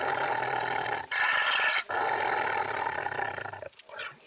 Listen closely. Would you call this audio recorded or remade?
recorded